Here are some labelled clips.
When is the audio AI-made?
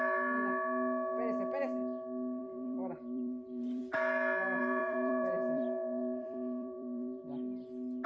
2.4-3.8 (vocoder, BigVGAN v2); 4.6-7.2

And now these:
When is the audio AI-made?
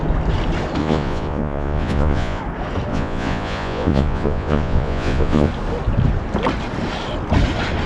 0.8-2.4 (vocoder, Vocos); 2.9-5.5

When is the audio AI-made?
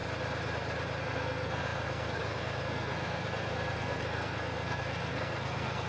1.0-5.9 (codec, SNAC)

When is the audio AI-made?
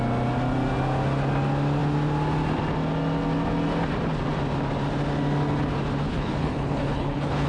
6.1-7.5 (codec, HILCodec)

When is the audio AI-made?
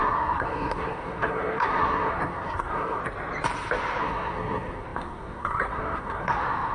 0.0-3.0 (codec, SNAC); 4.0-6.7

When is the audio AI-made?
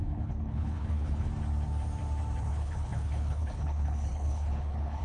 0.0-1.3 (codec, HILCodec); 2.4-5.0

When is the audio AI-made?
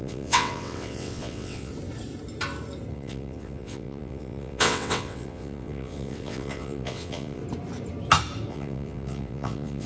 0.0-1.7 (vocoder, WaveNeXt); 2.9-7.4; 8.5-9.9